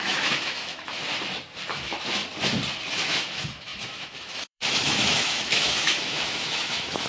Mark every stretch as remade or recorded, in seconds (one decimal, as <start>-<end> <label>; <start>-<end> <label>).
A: 0.0-1.0 remade; 1.0-1.7 recorded; 1.7-2.2 remade; 2.2-2.9 recorded; 2.9-7.1 remade